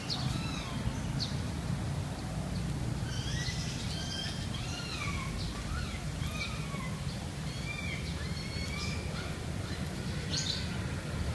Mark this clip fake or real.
real